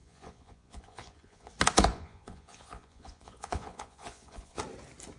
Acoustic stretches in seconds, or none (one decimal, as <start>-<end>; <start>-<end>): 1.5-1.9; 4.6-5.2